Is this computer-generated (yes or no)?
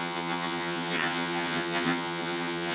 yes